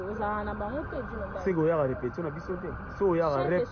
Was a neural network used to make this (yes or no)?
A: no